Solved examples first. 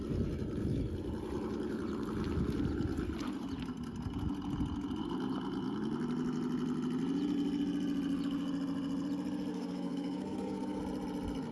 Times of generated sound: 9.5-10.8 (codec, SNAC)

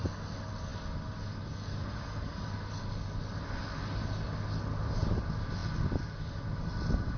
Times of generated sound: none

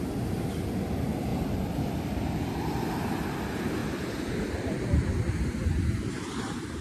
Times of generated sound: none

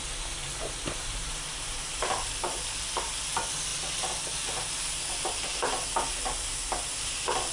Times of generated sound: 0.4-2.3 (vocoder, BigVGAN v2)

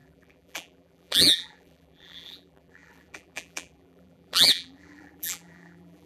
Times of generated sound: 0.0-6.1 (vocoder, BigVGAN v2)

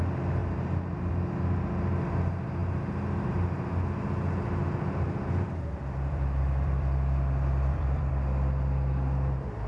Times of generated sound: 4.6-8.1 (vocoder, BigVGAN v2)